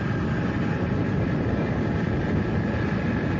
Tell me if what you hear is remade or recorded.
recorded